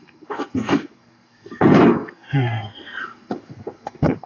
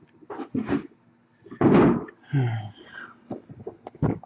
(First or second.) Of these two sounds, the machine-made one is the first